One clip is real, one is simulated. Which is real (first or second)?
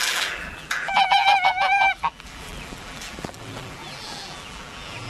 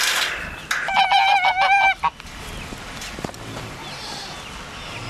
second